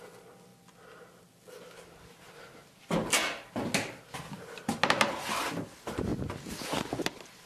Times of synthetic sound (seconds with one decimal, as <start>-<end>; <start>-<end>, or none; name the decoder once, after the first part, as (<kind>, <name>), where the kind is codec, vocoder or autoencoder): none